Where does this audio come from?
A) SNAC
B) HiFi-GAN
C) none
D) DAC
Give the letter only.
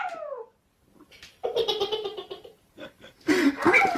C